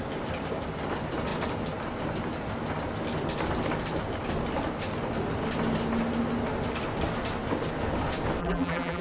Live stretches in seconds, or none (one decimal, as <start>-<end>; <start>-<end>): 0.0-8.4